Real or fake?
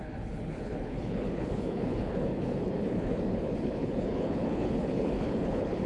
fake